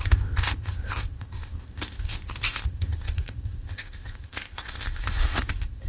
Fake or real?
fake